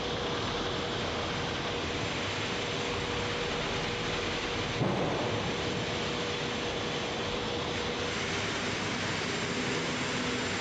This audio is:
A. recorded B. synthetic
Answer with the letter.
A